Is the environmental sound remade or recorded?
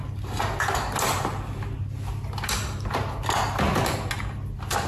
recorded